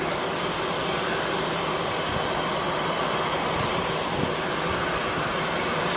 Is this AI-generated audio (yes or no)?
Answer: no